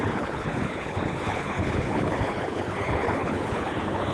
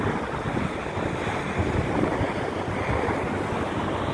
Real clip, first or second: second